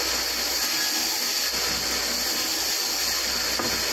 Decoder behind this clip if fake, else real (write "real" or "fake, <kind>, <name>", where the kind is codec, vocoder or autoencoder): real